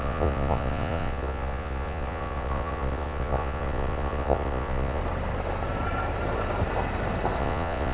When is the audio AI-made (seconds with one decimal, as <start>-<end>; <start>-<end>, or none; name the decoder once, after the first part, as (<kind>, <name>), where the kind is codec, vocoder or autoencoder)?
0.0-5.0 (vocoder, Vocos); 7.4-7.9